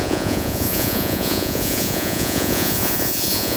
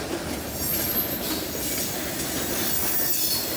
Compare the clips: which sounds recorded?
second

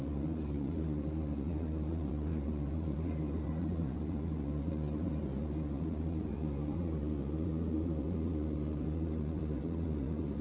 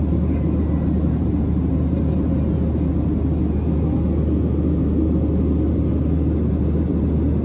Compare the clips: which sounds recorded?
second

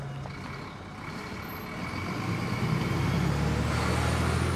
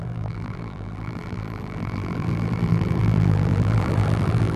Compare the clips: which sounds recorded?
first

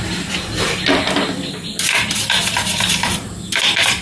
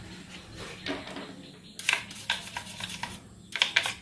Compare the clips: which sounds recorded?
second